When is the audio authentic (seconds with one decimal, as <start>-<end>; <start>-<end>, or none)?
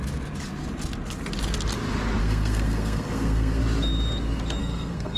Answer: 0.0-2.2; 3.6-4.6